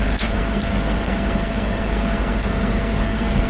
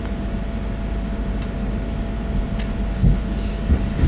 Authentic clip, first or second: second